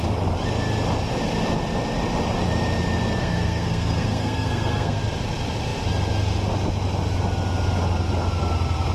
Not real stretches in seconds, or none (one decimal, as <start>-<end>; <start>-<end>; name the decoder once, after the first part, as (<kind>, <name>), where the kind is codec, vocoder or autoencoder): 3.2-5.0 (codec, SNAC)